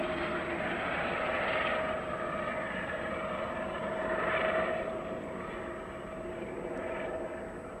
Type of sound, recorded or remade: recorded